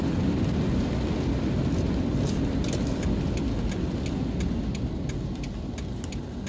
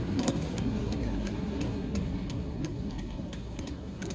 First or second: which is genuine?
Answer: first